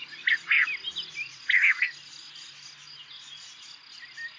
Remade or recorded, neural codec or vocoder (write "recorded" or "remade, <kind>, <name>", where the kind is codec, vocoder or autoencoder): recorded